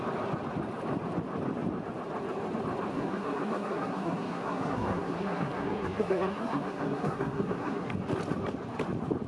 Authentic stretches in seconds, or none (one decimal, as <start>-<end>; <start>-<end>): 0.0-2.9; 7.9-9.3